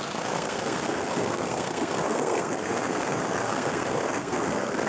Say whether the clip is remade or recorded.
remade